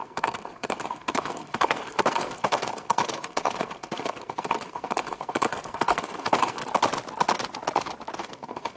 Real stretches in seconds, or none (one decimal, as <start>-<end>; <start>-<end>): 6.6-8.2